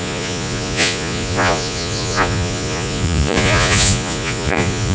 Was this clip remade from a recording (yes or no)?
yes